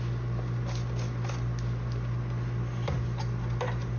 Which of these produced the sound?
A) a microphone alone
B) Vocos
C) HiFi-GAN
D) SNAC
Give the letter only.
A